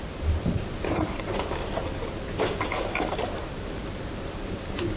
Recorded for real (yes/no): yes